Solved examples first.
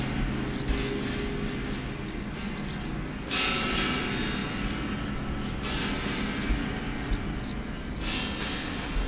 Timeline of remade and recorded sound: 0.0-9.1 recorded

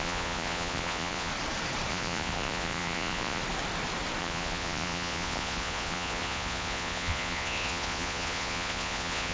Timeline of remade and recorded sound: 0.0-1.3 remade; 1.3-1.9 recorded; 1.9-3.4 remade; 3.4-4.2 recorded; 4.2-9.3 remade

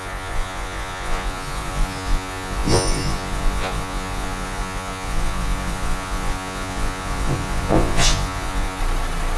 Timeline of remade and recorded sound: 0.0-8.8 remade; 8.8-9.4 recorded

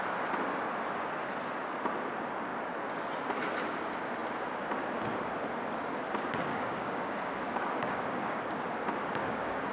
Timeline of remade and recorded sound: 0.0-6.5 recorded; 6.5-8.6 remade; 8.6-9.2 recorded; 9.2-9.7 remade